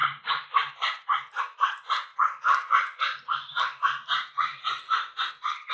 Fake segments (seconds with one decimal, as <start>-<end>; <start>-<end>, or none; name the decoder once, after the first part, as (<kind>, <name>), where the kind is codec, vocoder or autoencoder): 0.0-1.4 (vocoder, BigVGAN v2); 2.1-5.3